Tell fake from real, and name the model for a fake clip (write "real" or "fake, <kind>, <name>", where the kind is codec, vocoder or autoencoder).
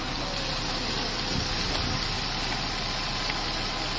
real